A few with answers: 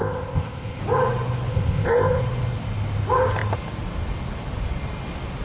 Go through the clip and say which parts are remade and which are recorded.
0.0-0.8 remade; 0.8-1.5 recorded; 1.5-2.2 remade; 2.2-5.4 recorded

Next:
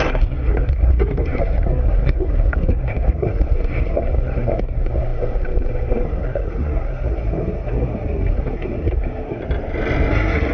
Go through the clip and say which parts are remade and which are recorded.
0.0-9.4 remade; 9.4-10.1 recorded; 10.1-10.5 remade

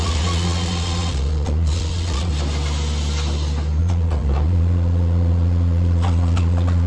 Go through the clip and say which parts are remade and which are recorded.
0.0-2.3 remade; 2.3-3.8 recorded; 3.8-6.9 remade

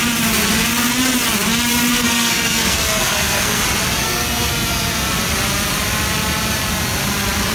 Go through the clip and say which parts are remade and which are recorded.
0.0-1.9 recorded; 1.9-3.6 remade; 3.6-4.0 recorded; 4.0-4.5 remade; 4.5-7.5 recorded

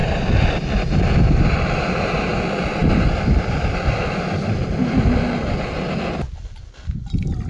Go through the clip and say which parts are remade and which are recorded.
0.0-7.5 recorded

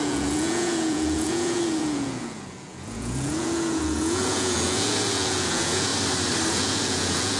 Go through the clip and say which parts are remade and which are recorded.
0.0-5.9 remade; 5.9-6.5 recorded; 6.5-7.4 remade

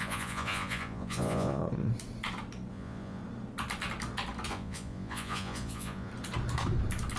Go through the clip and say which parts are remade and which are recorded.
0.0-1.6 remade; 1.6-2.7 recorded; 2.7-3.2 remade; 3.2-4.5 recorded; 4.5-6.1 remade; 6.1-7.2 recorded

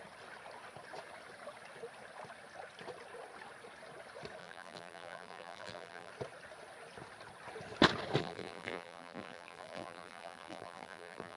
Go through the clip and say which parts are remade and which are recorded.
0.0-4.4 recorded; 4.4-6.1 remade; 6.1-8.2 recorded; 8.2-11.4 remade